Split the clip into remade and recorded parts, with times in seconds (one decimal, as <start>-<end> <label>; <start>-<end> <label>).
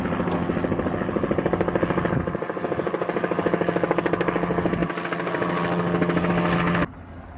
0.0-7.4 recorded